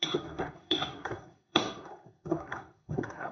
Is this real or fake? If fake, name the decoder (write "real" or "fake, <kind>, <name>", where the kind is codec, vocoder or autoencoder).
fake, codec, SNAC